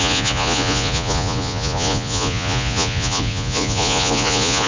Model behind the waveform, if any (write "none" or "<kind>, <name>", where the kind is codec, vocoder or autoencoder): vocoder, Vocos